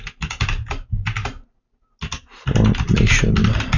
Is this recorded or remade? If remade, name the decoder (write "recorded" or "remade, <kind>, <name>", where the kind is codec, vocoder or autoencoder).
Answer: recorded